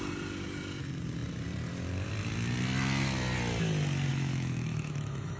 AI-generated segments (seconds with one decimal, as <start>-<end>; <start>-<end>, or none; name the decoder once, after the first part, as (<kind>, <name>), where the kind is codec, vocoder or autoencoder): 4.1-5.4 (autoencoder, DAC-VAE)